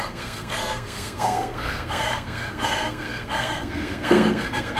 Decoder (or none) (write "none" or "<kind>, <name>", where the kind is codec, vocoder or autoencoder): codec, SNAC